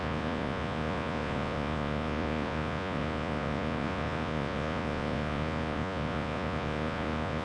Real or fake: fake